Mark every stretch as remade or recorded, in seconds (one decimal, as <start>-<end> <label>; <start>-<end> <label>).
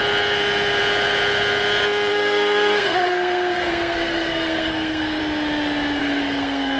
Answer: 0.0-2.1 recorded; 2.1-5.2 remade; 5.2-6.0 recorded; 6.0-6.8 remade